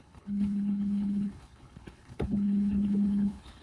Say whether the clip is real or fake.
fake